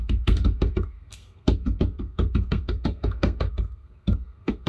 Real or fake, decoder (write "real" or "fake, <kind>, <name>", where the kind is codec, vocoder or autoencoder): fake, codec, SNAC